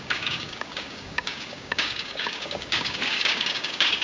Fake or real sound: fake